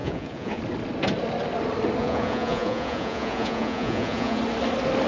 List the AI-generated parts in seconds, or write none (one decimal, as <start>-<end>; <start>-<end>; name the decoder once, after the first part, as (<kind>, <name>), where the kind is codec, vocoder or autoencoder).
0.0-0.6 (vocoder, Vocos); 2.0-4.4